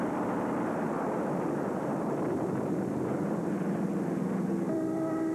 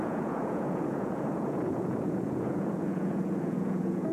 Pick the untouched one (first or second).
first